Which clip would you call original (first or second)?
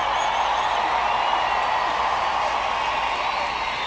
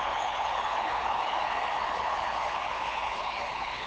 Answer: first